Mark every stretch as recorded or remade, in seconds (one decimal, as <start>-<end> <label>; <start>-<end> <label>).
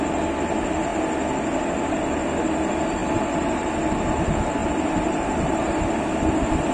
0.0-3.0 recorded; 3.0-3.7 remade; 3.7-4.6 recorded; 4.6-5.9 remade; 5.9-6.7 recorded